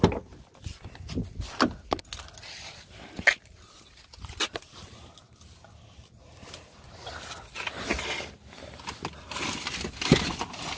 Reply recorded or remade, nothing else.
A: recorded